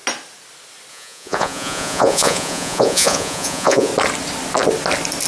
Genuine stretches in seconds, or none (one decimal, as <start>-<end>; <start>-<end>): 0.0-0.9; 3.9-5.3